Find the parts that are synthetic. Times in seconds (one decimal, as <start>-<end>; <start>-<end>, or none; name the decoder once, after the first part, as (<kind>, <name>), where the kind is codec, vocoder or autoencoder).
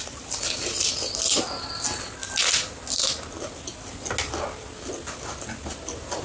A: none